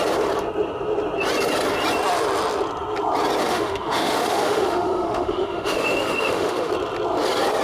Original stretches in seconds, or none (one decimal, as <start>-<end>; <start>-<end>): 0.0-3.4; 6.7-7.6